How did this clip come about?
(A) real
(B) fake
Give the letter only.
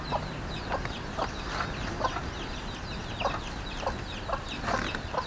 A